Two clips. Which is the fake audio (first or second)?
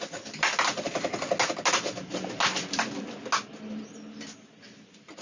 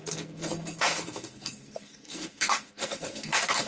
second